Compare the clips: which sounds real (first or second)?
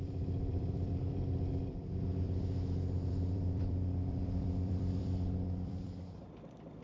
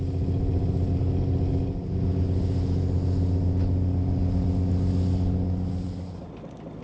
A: second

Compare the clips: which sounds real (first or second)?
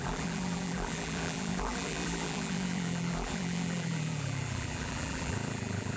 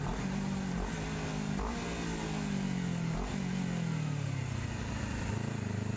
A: second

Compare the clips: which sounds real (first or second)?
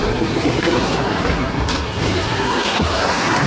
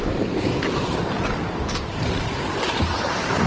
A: second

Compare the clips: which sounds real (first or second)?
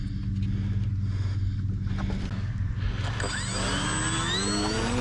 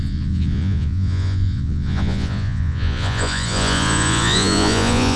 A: first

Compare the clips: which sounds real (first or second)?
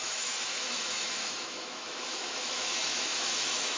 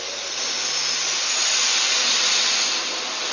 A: second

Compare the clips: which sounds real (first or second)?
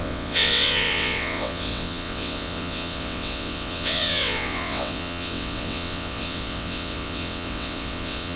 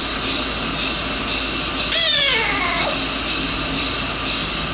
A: second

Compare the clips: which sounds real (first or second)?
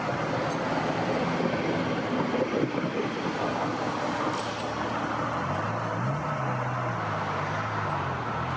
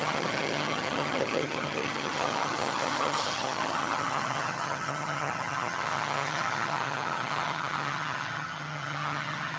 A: first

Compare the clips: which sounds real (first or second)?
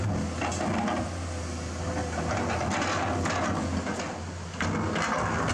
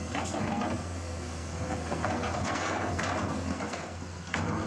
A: first